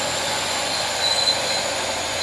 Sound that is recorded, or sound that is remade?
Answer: remade